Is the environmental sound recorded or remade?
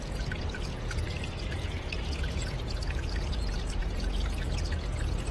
remade